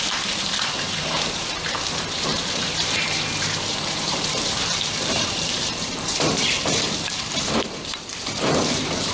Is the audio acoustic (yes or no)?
no